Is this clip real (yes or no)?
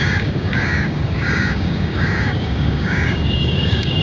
no